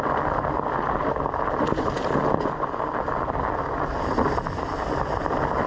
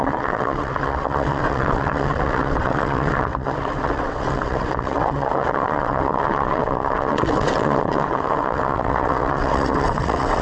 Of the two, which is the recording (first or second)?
first